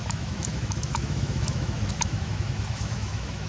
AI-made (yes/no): yes